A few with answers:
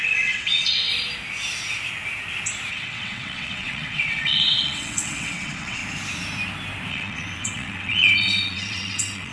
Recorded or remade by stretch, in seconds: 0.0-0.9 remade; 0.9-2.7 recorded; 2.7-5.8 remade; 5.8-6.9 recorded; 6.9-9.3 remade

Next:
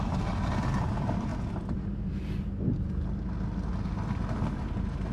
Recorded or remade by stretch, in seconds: 0.0-5.1 recorded